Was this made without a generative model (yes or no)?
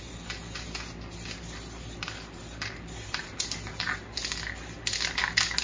yes